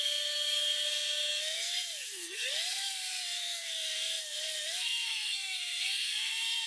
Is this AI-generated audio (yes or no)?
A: yes